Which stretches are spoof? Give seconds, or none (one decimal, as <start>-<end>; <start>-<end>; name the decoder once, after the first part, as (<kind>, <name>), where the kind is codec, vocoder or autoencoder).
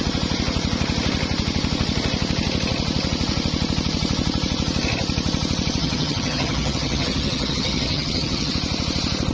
5.8-8.5 (vocoder, HiFi-GAN)